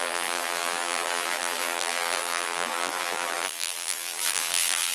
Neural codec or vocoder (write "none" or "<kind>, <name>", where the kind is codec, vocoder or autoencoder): vocoder, BigVGAN v2